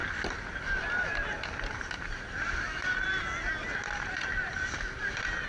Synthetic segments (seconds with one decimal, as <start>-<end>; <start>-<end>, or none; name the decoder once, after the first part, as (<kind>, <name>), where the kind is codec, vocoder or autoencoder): none